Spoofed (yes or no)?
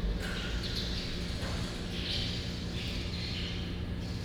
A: no